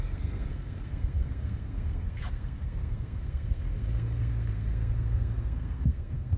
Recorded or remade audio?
remade